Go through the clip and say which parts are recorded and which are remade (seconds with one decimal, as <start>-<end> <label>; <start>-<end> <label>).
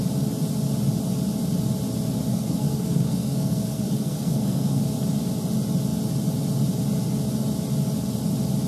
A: 0.0-2.3 recorded; 2.3-4.8 remade; 4.8-8.7 recorded